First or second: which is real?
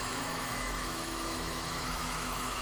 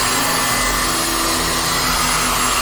second